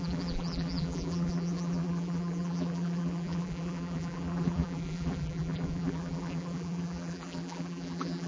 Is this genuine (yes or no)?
no